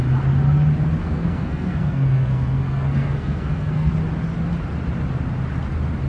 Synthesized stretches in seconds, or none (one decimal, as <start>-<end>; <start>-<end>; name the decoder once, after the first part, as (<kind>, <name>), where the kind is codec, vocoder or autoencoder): 1.0-3.9 (codec, SNAC)